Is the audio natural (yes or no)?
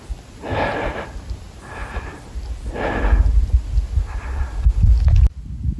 yes